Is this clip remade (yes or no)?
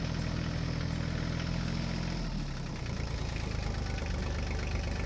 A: no